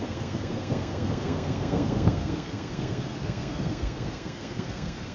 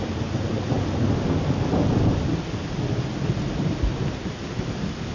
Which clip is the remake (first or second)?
first